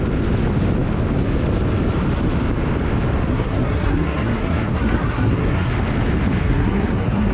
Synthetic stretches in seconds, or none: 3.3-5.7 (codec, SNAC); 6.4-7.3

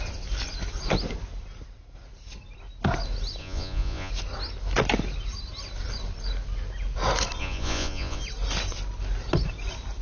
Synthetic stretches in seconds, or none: 3.4-4.1 (vocoder, Vocos); 7.4-8.2

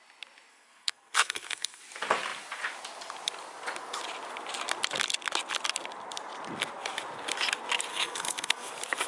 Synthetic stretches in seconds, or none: 0.5-1.8 (codec, SNAC); 7.9-8.7

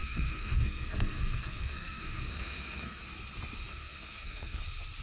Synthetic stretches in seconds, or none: 0.0-3.0 (codec, SNAC); 3.7-4.6

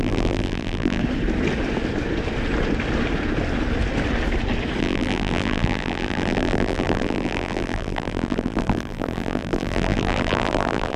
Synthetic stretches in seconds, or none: 0.0-1.0 (vocoder, BigVGAN v2); 4.8-11.0

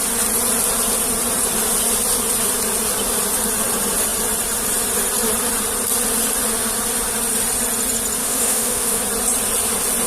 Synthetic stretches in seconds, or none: 8.2-9.0 (autoencoder, DAC-VAE)

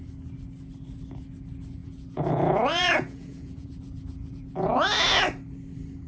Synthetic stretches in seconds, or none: 1.8-4.5 (vocoder, Vocos)